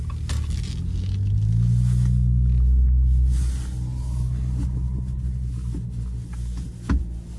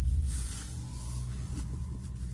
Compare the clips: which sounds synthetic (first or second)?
second